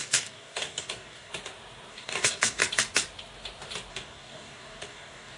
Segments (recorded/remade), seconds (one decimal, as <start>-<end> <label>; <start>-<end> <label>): 0.0-1.3 remade; 1.3-1.9 recorded; 1.9-2.6 remade; 2.6-3.9 recorded; 3.9-5.4 remade